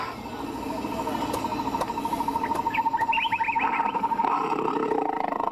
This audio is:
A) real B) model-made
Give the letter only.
A